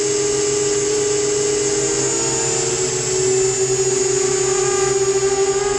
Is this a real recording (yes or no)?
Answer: yes